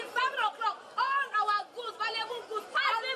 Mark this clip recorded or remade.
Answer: recorded